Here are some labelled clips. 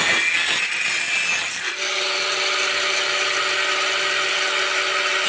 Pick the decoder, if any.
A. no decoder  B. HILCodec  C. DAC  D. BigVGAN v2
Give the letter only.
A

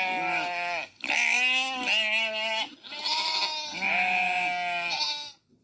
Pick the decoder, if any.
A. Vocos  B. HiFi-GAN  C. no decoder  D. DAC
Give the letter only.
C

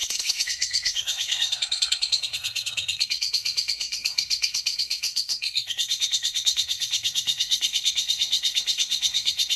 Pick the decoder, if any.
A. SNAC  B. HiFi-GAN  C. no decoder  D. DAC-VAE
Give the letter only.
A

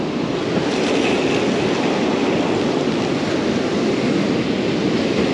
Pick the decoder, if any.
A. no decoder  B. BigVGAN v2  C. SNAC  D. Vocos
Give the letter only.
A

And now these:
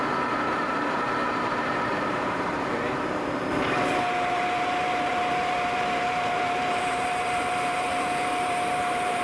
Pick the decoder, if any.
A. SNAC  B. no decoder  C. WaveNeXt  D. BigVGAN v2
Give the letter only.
D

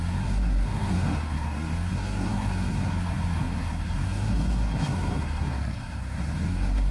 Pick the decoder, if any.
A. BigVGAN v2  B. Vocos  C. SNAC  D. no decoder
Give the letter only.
C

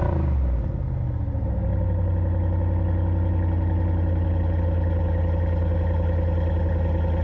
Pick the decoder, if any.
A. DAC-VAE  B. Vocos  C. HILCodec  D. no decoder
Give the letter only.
D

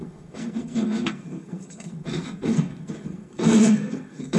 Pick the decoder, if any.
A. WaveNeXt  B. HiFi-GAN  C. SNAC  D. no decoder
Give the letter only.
C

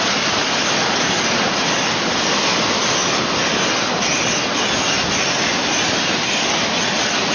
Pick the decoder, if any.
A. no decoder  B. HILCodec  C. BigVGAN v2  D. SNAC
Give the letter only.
A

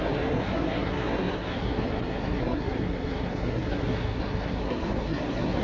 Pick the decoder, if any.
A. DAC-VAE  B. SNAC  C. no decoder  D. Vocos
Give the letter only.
B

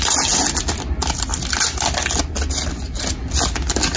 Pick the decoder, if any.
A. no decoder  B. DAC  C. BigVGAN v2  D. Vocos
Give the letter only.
A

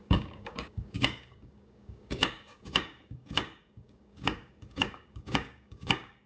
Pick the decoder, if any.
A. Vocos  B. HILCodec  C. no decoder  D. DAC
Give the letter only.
D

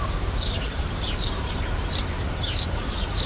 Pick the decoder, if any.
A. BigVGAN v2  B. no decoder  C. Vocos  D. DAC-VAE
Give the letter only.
A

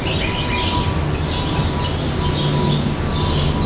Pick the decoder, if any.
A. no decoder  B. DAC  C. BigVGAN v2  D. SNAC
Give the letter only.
A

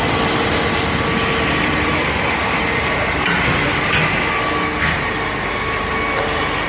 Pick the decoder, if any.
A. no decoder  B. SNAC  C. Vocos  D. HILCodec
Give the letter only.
A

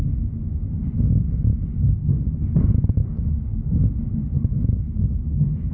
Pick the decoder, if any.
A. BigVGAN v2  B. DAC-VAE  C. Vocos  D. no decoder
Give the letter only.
D